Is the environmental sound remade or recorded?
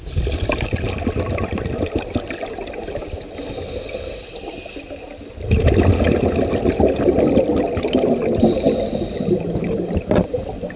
recorded